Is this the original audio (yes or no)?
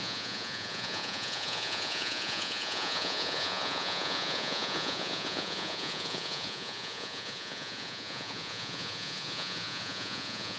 no